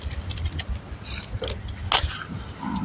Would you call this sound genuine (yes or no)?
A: yes